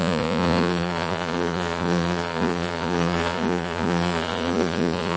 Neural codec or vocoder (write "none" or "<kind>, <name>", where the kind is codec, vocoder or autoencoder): vocoder, Vocos